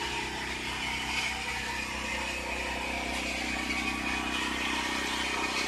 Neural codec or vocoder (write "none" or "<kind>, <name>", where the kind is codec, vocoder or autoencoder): none